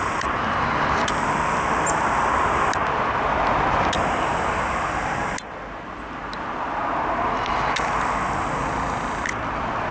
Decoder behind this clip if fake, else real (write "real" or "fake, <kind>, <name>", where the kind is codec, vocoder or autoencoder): real